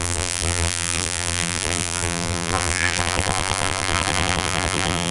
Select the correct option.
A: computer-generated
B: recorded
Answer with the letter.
A